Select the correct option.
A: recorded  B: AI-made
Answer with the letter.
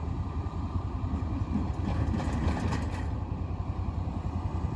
A